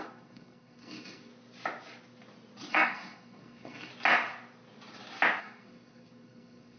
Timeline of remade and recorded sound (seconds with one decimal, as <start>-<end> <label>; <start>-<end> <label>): 0.0-1.3 remade; 1.3-2.7 recorded; 2.7-3.9 remade; 3.9-5.4 recorded; 5.4-6.8 remade